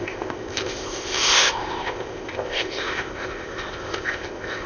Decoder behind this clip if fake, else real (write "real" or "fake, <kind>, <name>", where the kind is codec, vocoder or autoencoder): fake, codec, ZipCodec